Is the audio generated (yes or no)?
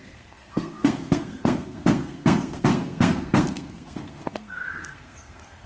yes